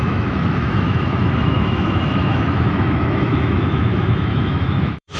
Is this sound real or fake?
fake